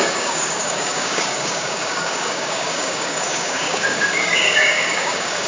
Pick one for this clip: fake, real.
fake